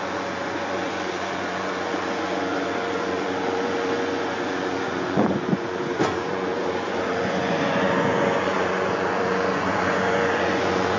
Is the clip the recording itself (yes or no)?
no